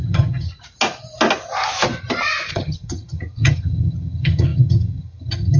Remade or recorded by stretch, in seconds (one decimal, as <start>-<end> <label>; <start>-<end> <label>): 0.0-0.5 remade; 0.5-2.5 recorded; 2.5-5.6 remade